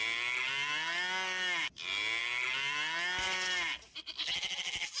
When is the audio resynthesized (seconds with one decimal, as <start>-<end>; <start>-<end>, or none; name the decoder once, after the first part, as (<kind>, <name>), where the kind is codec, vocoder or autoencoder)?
none